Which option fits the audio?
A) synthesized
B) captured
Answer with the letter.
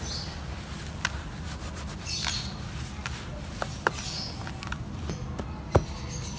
B